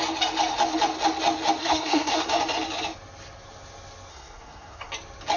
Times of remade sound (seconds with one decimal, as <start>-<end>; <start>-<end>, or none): 1.6-2.3; 4.1-4.9